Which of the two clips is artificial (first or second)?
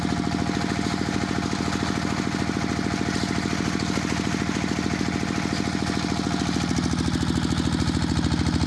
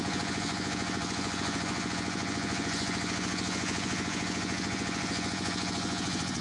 second